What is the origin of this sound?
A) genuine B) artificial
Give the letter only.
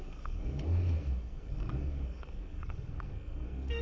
B